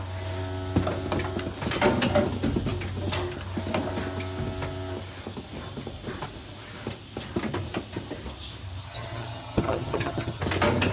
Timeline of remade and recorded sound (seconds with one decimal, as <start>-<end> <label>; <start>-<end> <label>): 0.0-8.8 recorded; 8.8-10.4 remade; 10.4-10.9 recorded